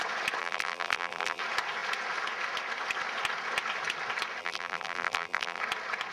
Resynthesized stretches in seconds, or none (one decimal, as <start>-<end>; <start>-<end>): 0.4-1.4; 4.4-5.6